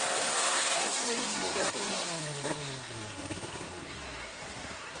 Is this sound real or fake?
fake